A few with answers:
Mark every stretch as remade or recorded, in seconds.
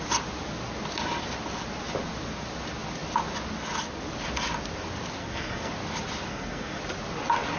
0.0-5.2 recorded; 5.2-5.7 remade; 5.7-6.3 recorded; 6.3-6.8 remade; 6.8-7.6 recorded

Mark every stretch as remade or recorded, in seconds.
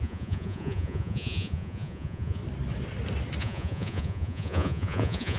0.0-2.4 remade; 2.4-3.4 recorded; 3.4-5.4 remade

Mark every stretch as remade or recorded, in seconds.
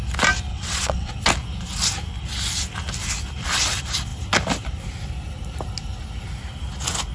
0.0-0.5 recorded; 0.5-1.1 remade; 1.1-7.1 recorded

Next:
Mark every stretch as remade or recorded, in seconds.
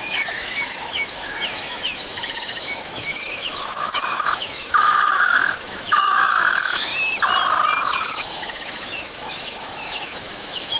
0.0-6.9 remade; 6.9-7.8 recorded; 7.8-10.8 remade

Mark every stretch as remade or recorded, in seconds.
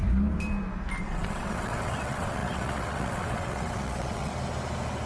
0.0-1.0 recorded; 1.0-4.3 remade; 4.3-5.1 recorded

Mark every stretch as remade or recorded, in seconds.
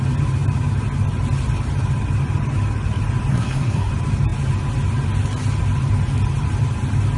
0.0-3.3 recorded; 3.3-3.9 remade; 3.9-7.2 recorded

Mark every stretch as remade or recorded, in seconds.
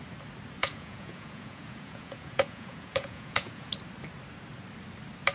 0.0-0.6 recorded; 0.6-3.7 remade; 3.7-5.3 recorded